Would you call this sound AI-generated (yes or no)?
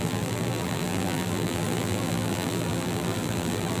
yes